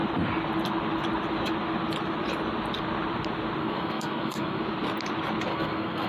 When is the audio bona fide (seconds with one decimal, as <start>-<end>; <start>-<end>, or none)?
0.0-3.6; 4.6-5.5